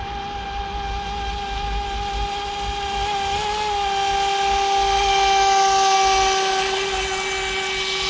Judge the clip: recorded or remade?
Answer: recorded